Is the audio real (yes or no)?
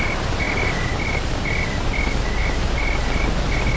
yes